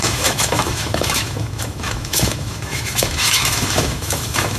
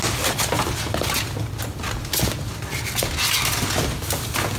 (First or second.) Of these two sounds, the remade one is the first